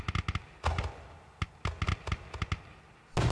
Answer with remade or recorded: recorded